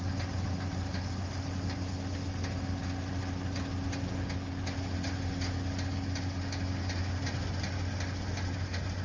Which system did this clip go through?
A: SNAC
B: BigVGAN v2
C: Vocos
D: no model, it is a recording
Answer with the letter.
D